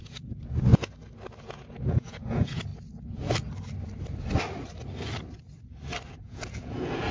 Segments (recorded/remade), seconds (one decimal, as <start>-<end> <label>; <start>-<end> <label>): 0.0-0.7 remade; 0.7-1.4 recorded; 1.4-2.7 remade; 2.7-6.2 recorded; 6.2-7.1 remade